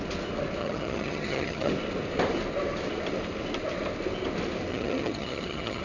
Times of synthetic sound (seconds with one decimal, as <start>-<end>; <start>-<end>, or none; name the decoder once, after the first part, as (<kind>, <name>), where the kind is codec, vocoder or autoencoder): 0.6-1.7 (vocoder, HiFi-GAN); 4.7-5.8